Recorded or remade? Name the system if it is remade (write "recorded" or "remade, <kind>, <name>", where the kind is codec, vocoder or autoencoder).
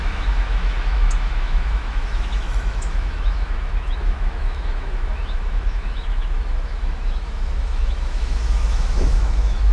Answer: remade, autoencoder, DAC-VAE